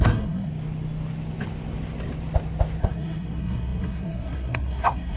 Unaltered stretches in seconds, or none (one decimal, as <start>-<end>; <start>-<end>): 0.5-2.8